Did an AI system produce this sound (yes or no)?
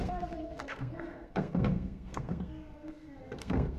yes